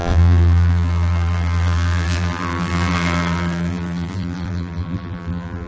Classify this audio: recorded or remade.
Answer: remade